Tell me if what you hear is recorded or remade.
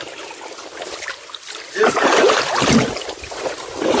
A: remade